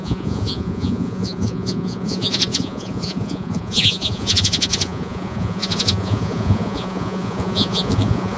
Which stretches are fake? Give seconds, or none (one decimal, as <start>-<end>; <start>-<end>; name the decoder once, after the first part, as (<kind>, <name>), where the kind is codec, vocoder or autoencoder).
0.0-8.4 (vocoder, Vocos)